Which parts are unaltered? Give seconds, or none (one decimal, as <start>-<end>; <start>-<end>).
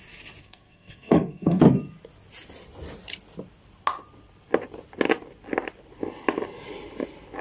0.0-0.4; 1.6-7.4